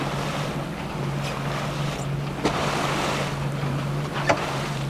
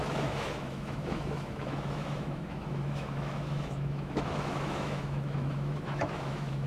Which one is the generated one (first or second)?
second